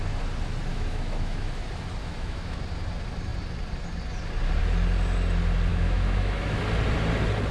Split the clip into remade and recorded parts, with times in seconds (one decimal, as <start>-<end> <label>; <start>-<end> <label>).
0.0-0.7 recorded; 0.7-1.6 remade; 1.6-2.0 recorded; 2.0-2.6 remade; 2.6-5.7 recorded; 5.7-6.6 remade; 6.6-7.5 recorded